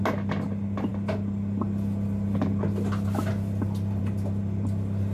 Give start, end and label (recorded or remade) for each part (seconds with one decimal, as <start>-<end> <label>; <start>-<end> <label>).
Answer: 0.0-5.1 recorded